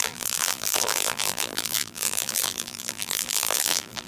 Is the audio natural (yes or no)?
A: no